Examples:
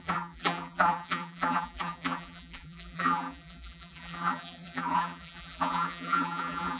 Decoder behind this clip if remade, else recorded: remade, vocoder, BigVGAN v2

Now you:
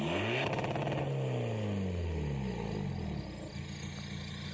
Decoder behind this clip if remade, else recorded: recorded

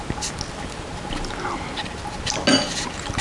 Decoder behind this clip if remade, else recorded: recorded